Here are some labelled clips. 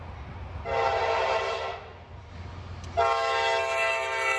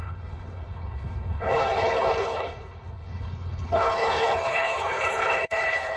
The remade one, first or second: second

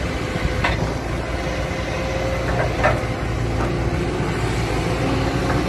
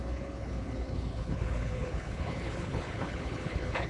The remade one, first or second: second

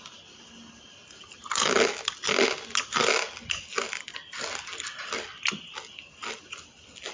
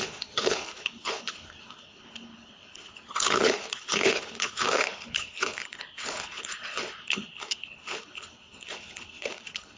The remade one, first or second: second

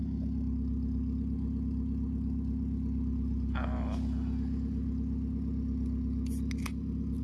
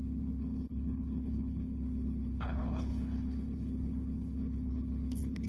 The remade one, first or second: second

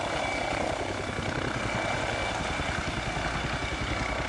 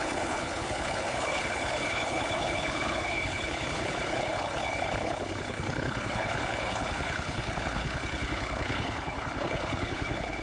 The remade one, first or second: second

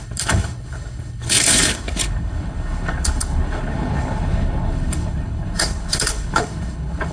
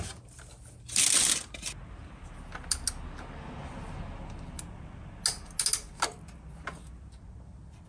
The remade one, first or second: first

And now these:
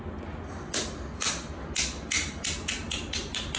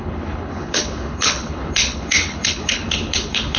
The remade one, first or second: second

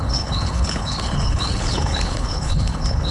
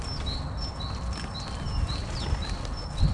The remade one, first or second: first